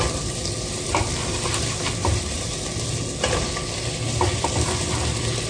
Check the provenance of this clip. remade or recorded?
recorded